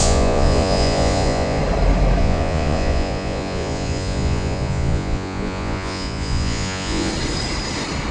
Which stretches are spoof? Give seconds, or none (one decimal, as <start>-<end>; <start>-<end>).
0.0-1.6; 2.2-7.1